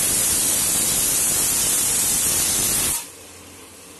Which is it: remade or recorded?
recorded